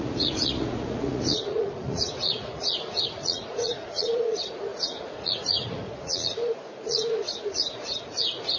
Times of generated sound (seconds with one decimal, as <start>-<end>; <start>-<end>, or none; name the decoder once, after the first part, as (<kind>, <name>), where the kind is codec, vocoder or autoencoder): 0.0-8.6 (vocoder, Vocos)